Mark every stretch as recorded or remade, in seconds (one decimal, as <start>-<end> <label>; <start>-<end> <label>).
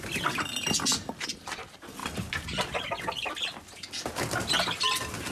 0.0-5.3 recorded